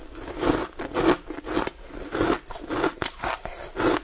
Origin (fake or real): real